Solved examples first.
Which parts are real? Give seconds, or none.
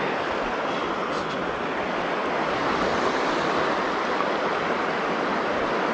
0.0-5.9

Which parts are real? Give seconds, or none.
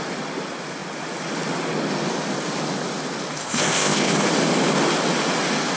0.0-3.4; 4.1-5.8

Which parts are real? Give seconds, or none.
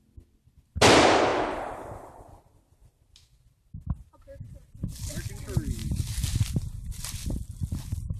0.0-4.6; 5.3-5.8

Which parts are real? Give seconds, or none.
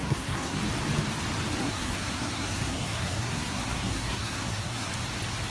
0.6-1.6; 4.9-5.5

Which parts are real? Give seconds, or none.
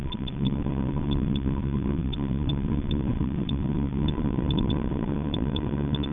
none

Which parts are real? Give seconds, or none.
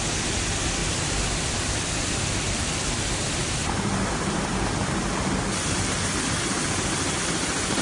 0.0-0.8; 4.4-7.8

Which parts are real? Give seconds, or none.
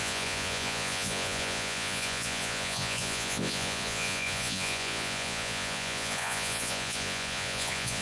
none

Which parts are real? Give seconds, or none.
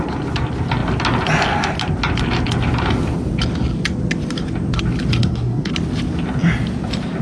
0.0-5.2; 5.7-7.2